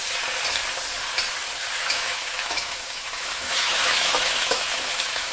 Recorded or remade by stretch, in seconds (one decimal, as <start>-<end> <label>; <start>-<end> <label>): 0.0-1.8 recorded; 1.8-5.3 remade